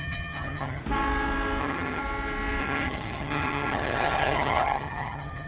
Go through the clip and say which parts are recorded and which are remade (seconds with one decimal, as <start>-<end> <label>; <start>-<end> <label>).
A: 0.0-0.8 remade; 0.8-1.6 recorded; 1.6-2.0 remade; 2.0-2.6 recorded; 2.6-5.5 remade